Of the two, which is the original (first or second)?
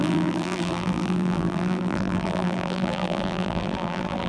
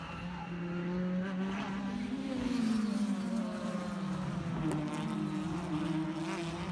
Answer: second